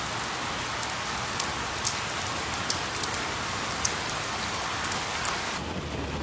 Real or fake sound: real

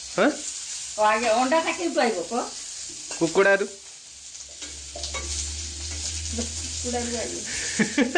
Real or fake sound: real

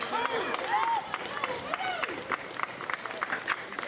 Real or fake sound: real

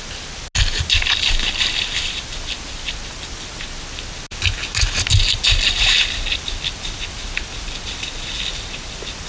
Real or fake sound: real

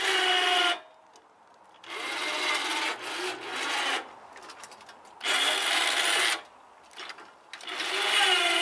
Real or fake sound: real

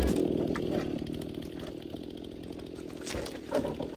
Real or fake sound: real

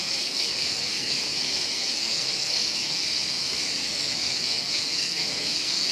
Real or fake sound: fake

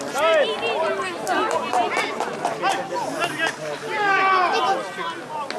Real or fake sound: real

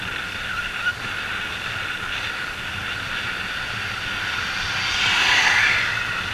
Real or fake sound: real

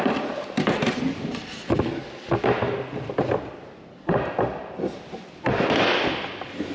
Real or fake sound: real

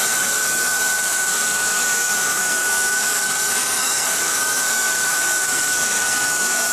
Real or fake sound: fake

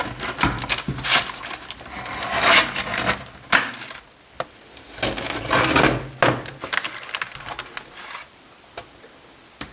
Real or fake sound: real